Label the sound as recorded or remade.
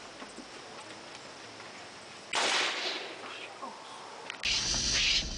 recorded